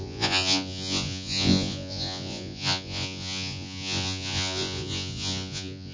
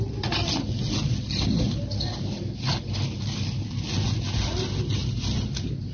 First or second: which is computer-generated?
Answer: first